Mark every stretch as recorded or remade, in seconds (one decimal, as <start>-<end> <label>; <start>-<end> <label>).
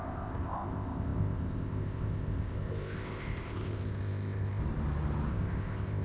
0.0-4.6 remade; 4.6-5.3 recorded; 5.3-6.0 remade